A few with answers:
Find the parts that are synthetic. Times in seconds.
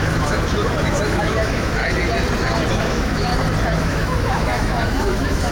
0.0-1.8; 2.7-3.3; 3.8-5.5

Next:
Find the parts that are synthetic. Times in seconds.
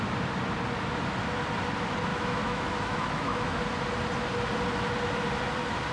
2.1-3.6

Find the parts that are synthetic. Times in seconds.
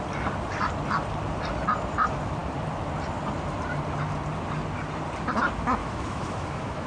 5.8-6.9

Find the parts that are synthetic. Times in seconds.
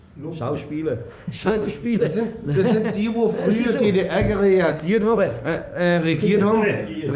1.0-2.0; 4.7-6.2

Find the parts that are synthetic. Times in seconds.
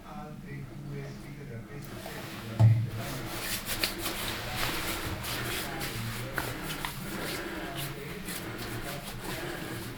2.3-2.9